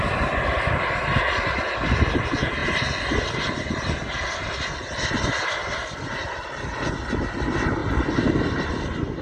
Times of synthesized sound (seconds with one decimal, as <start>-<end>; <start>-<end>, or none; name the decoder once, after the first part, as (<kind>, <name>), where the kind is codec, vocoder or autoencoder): 7.8-8.5 (vocoder, BigVGAN v2)